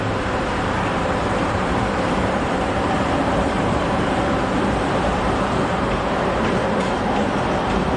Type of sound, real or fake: fake